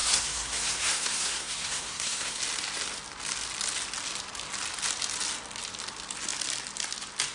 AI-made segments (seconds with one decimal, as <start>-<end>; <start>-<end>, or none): 0.0-2.4